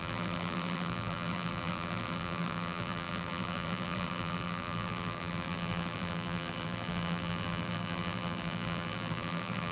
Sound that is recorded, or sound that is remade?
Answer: remade